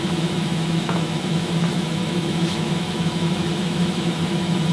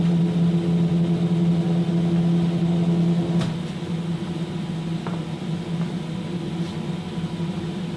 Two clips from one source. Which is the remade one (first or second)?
first